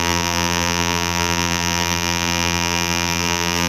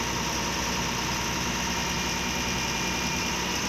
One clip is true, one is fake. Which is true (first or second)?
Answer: second